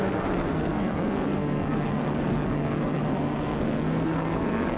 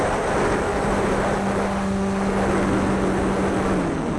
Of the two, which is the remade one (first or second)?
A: first